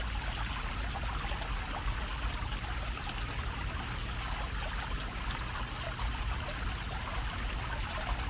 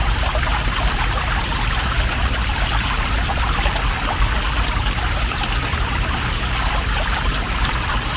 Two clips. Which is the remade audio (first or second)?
second